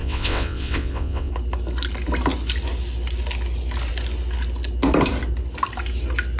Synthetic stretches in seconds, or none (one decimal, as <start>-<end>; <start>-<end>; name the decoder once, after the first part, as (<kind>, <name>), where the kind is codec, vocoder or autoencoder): 0.0-1.3 (vocoder, WaveNeXt)